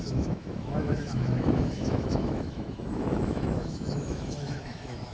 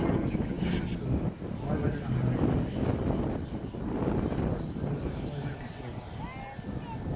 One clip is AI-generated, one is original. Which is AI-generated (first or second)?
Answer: first